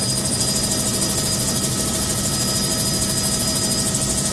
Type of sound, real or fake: real